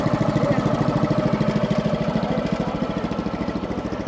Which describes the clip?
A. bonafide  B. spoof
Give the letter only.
A